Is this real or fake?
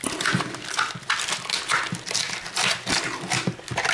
real